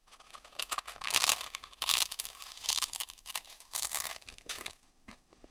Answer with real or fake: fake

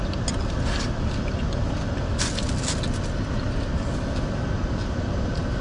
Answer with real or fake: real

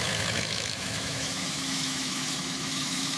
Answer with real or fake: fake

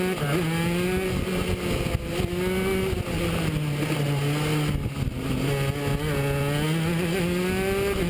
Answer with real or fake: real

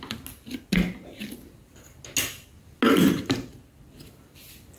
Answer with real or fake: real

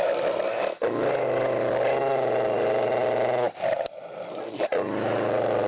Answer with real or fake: real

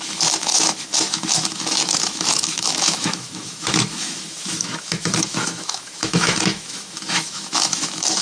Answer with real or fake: fake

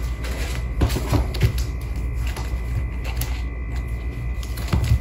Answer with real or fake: real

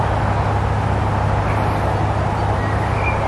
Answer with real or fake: real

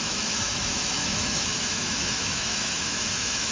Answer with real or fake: fake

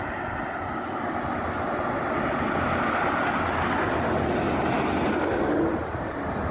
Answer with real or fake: real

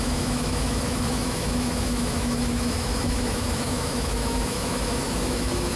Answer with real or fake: fake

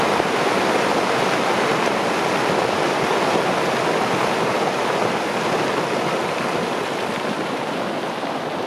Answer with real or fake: real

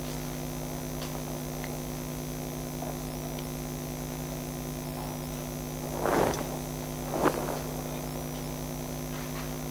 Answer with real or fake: real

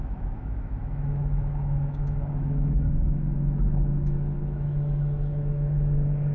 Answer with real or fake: fake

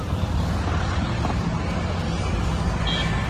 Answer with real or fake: real